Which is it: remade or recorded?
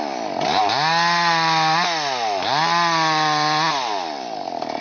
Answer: recorded